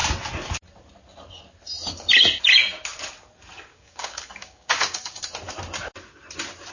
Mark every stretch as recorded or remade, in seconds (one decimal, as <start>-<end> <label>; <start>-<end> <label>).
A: 0.0-3.7 recorded; 3.7-5.2 remade; 5.2-6.7 recorded

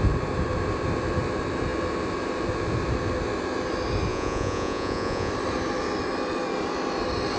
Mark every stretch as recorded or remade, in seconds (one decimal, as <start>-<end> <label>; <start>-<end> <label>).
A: 0.0-4.1 recorded; 4.1-5.3 remade; 5.3-7.4 recorded

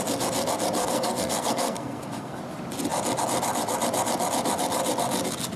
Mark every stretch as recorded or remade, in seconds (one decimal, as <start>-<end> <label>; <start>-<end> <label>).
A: 0.0-0.8 recorded; 0.8-2.4 remade; 2.4-5.6 recorded

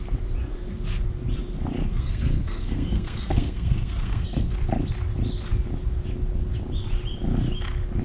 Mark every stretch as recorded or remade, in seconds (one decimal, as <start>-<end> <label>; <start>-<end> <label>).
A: 0.0-1.9 recorded; 1.9-4.5 remade; 4.5-8.0 recorded